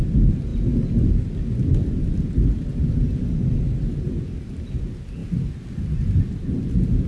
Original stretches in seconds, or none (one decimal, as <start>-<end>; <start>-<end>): 0.0-7.1